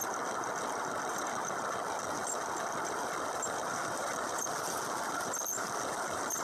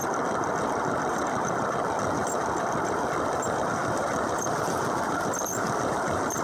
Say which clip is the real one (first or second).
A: first